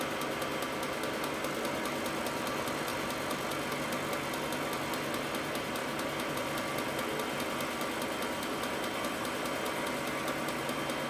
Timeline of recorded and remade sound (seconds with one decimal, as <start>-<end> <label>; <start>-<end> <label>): 0.0-11.1 recorded